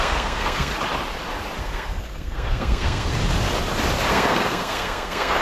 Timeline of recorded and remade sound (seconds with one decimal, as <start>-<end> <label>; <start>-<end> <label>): 0.0-0.7 remade; 0.7-1.6 recorded; 1.6-3.2 remade; 3.2-4.1 recorded; 4.1-5.4 remade